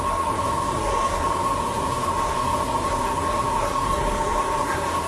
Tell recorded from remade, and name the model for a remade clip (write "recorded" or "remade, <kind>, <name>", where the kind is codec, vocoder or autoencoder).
remade, codec, SNAC